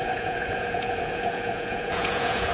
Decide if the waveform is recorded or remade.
remade